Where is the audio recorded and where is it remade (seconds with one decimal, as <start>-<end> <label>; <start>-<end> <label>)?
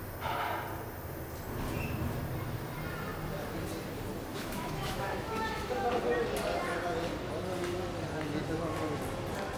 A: 0.0-4.3 recorded; 4.3-5.9 remade; 5.9-9.6 recorded